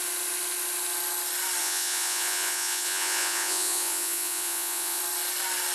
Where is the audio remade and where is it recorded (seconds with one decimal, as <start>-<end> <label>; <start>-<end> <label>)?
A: 0.0-1.6 recorded; 1.6-5.0 remade; 5.0-5.7 recorded